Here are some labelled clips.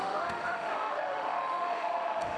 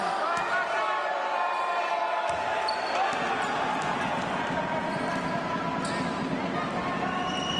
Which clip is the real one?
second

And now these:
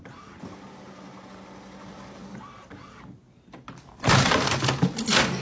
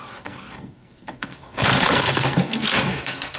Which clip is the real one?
first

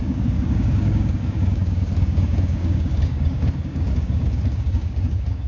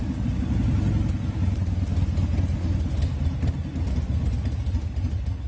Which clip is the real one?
second